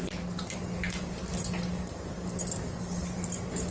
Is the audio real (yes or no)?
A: yes